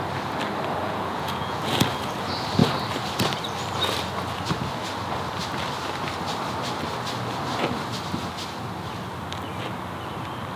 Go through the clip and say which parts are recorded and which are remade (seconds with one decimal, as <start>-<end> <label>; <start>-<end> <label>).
0.0-0.8 recorded; 0.8-1.6 remade; 1.6-10.6 recorded